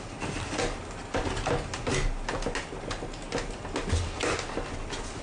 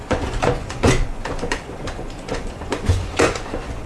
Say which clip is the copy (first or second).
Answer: second